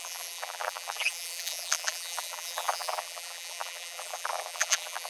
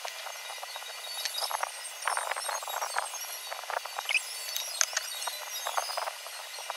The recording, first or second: second